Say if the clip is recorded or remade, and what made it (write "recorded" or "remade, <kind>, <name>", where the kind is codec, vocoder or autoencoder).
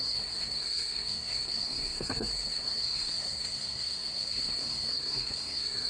remade, codec, SNAC